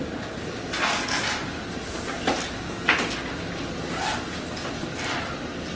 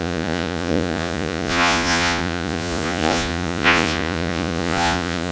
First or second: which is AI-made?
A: second